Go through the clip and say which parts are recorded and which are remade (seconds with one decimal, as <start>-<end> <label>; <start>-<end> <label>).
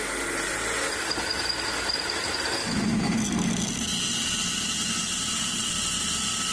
0.0-2.6 recorded; 2.6-3.1 remade; 3.1-6.5 recorded